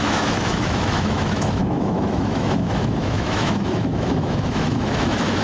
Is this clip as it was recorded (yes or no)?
no